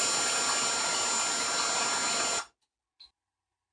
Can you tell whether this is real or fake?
real